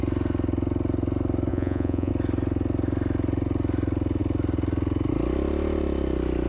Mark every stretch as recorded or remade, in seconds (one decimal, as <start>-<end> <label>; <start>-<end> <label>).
0.0-1.5 recorded; 1.5-2.1 remade; 2.1-6.5 recorded